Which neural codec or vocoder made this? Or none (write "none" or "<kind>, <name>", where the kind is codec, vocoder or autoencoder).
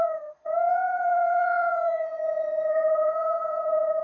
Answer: vocoder, Vocos